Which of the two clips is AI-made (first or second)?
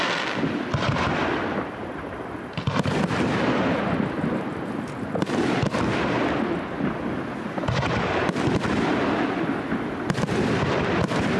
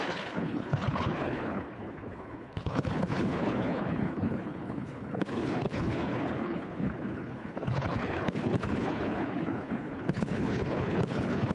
second